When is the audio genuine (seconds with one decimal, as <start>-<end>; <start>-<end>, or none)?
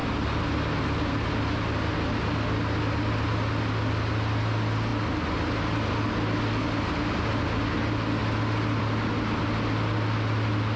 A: 0.0-10.8